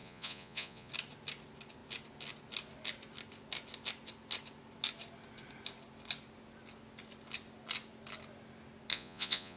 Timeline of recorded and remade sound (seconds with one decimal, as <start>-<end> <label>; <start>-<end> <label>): 0.0-0.9 remade; 0.9-8.9 recorded; 8.9-9.6 remade